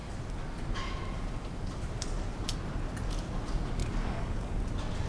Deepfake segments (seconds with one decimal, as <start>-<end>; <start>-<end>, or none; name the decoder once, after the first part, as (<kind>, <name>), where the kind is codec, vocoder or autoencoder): 3.8-4.6 (codec, DAC)